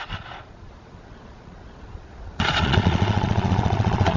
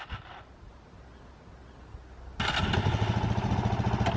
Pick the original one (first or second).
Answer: second